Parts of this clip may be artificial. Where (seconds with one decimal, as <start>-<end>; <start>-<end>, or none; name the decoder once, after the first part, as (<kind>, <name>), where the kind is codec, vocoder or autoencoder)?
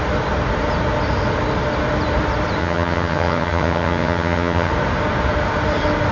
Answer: 2.6-4.7 (vocoder, HiFi-GAN)